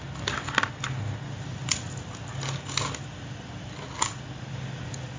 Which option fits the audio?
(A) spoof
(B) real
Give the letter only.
B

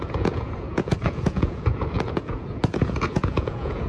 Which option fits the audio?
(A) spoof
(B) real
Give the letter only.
A